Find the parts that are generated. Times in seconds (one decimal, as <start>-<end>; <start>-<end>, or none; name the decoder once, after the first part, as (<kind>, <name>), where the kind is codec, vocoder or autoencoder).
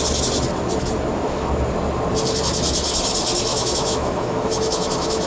3.5-5.3 (autoencoder, DAC-VAE)